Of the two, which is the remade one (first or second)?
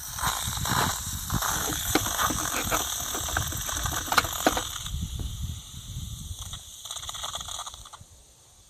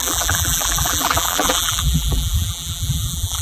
second